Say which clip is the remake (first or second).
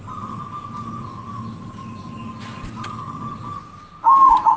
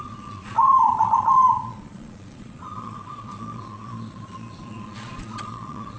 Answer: second